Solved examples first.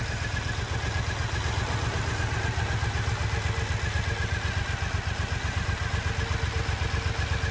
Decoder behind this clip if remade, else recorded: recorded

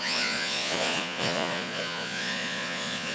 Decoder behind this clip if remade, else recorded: remade, vocoder, Vocos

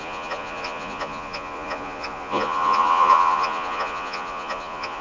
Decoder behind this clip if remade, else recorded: remade, vocoder, Vocos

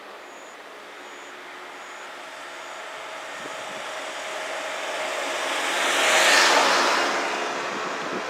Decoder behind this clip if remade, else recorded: recorded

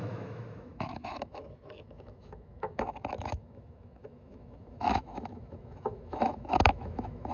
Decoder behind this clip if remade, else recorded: remade, autoencoder, DAC-VAE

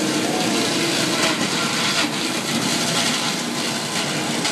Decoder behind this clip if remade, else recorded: recorded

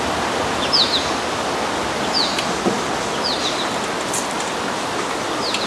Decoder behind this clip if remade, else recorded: recorded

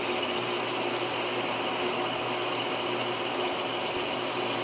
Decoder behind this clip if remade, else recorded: recorded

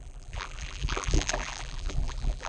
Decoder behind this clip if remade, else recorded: remade, vocoder, BigVGAN v2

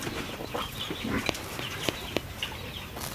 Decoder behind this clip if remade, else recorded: recorded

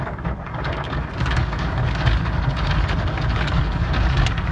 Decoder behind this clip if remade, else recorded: remade, codec, DAC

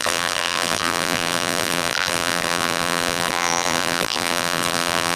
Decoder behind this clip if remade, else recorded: remade, vocoder, BigVGAN v2